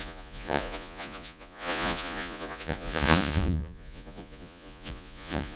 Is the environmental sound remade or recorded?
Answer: remade